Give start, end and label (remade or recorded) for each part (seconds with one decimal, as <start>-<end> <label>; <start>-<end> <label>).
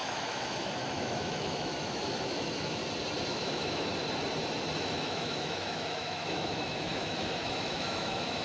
0.0-2.8 remade; 2.8-3.3 recorded; 3.3-3.9 remade; 3.9-4.8 recorded; 4.8-8.4 remade